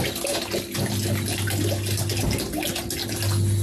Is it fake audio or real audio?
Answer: real